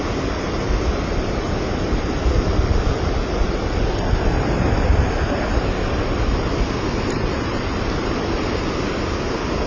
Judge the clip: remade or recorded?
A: recorded